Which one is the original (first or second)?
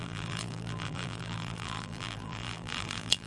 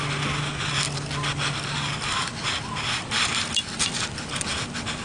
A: second